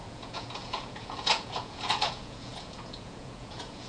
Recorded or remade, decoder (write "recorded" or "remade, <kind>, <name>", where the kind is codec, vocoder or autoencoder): remade, vocoder, Vocos